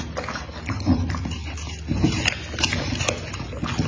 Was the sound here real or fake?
real